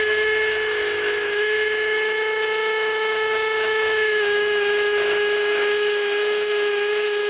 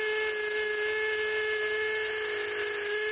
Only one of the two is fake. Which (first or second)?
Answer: first